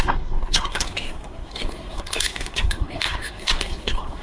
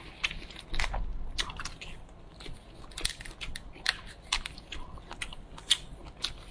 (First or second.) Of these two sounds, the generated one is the first